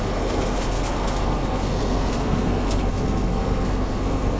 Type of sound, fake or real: fake